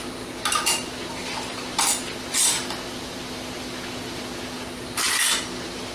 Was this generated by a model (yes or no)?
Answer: no